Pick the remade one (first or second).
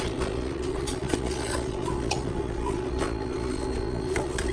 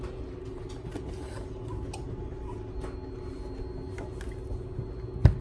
first